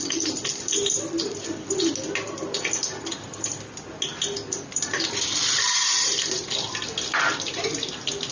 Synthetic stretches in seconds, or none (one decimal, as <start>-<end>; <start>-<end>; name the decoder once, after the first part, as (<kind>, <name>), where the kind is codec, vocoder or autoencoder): none